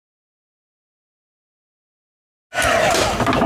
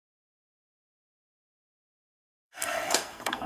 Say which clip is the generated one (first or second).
second